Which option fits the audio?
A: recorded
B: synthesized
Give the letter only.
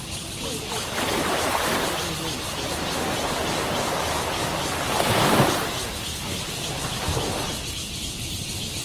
A